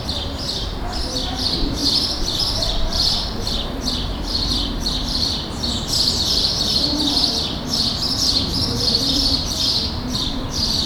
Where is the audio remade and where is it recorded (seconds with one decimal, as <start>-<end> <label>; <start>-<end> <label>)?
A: 0.0-10.9 remade